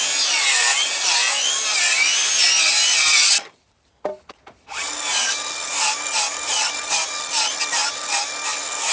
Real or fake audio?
real